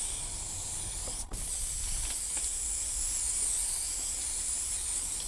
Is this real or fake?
real